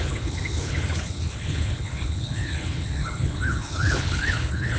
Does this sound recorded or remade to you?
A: remade